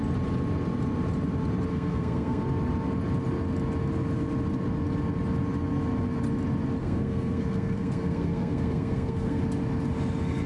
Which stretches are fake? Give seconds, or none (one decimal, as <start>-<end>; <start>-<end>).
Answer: 1.7-2.4; 6.8-9.4